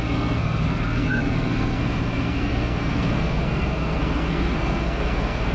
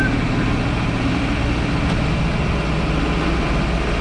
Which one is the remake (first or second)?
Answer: first